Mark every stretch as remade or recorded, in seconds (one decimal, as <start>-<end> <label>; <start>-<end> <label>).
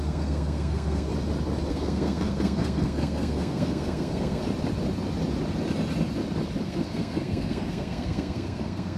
0.0-1.1 remade; 1.1-1.7 recorded; 1.7-4.4 remade; 4.4-6.6 recorded; 6.6-9.0 remade